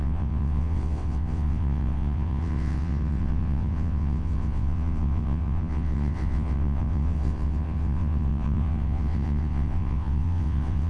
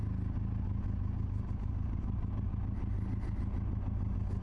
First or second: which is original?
second